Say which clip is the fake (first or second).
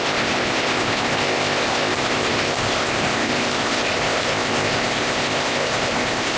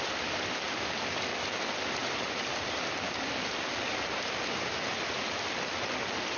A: first